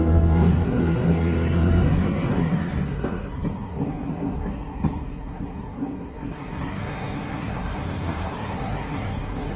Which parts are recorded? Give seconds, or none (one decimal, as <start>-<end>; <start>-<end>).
none